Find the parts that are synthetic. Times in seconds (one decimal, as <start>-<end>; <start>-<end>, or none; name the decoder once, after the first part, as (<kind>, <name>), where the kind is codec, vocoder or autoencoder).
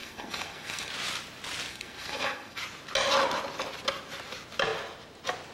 0.0-0.9 (codec, SNAC); 1.7-2.6